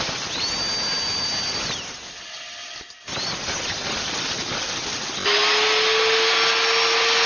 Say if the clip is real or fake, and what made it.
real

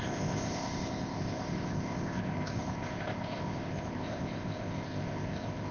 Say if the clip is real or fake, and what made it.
fake, codec, ZipCodec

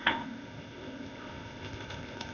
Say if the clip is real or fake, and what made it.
fake, codec, ZipCodec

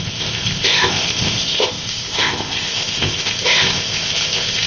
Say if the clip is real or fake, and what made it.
fake, codec, ZipCodec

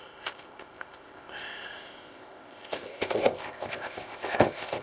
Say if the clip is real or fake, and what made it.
fake, codec, ZipCodec